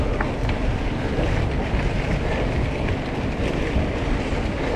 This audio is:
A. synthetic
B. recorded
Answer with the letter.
B